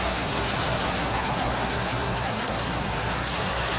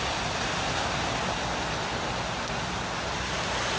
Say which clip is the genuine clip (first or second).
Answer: second